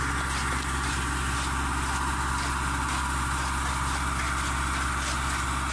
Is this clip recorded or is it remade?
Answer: recorded